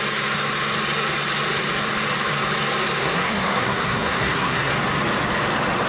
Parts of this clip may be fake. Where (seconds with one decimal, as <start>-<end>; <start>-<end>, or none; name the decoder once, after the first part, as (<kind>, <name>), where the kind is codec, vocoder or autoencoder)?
3.0-4.7 (codec, SNAC)